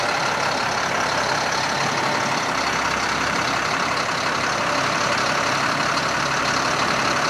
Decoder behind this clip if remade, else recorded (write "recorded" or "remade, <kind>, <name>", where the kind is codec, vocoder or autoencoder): remade, vocoder, BigVGAN v2